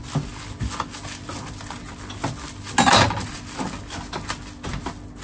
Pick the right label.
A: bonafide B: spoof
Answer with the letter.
A